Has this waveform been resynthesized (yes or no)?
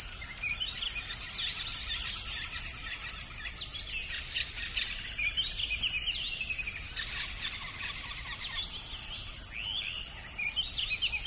no